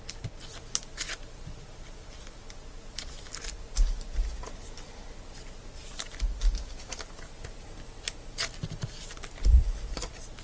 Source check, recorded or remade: recorded